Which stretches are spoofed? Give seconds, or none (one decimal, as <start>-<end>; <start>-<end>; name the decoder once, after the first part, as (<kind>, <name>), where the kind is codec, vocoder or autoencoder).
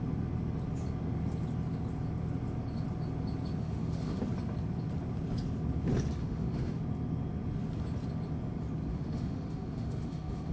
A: 3.6-4.2 (autoencoder, DAC-VAE); 6.2-6.8; 8.9-10.5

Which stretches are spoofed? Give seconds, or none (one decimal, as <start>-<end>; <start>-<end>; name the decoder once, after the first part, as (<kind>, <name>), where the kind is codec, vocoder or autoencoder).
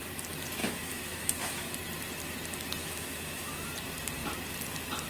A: 0.6-1.7 (autoencoder, DAC-VAE); 2.8-3.7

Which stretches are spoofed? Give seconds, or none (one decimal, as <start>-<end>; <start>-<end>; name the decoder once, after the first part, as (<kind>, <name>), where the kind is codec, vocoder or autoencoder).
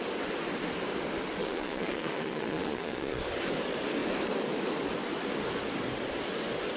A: 1.4-3.2 (vocoder, Vocos)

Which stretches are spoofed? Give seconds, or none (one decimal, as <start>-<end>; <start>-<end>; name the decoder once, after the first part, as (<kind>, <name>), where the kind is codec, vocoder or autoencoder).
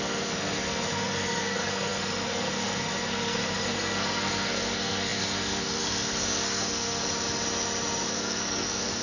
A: 0.0-7.0 (codec, SNAC); 8.1-9.0